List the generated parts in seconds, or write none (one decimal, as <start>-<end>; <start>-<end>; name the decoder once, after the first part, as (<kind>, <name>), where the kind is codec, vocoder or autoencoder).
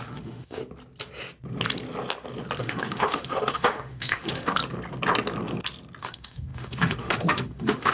0.0-0.6 (autoencoder, DAC-VAE); 2.6-4.6; 6.0-7.9